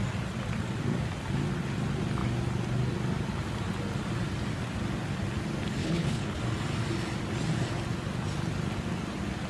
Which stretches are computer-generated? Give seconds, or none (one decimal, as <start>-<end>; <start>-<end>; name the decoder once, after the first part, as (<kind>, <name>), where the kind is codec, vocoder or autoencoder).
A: 5.8-6.4 (codec, HILCodec)